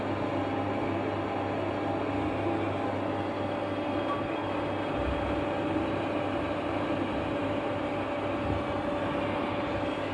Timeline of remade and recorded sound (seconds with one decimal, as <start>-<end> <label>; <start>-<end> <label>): 0.0-10.1 recorded